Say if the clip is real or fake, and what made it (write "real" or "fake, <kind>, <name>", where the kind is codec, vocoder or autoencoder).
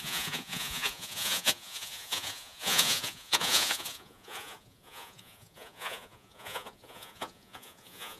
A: fake, vocoder, Vocos